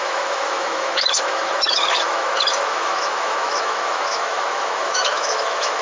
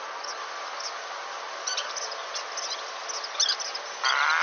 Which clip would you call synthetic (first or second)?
first